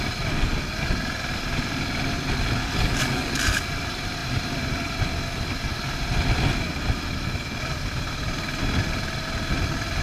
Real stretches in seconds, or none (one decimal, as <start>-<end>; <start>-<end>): 0.0-2.6; 3.3-10.0

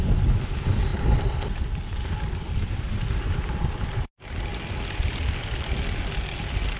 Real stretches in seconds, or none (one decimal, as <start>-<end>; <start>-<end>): 0.0-6.8

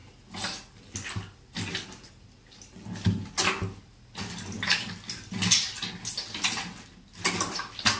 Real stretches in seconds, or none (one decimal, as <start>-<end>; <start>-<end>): 0.0-8.0

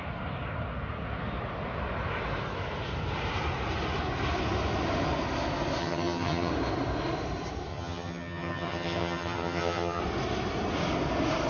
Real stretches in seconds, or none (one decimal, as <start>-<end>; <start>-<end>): 0.0-5.8; 6.5-7.7; 10.0-11.5

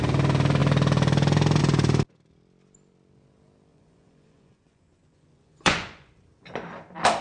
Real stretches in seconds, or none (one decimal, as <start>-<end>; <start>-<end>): 0.0-3.7; 6.1-7.2

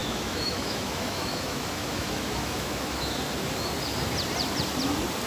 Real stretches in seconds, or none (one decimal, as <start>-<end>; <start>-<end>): 3.2-5.3